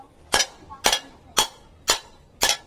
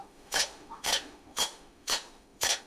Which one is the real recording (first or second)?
first